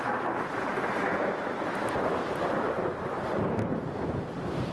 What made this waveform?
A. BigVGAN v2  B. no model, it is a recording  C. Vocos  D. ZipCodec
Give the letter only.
B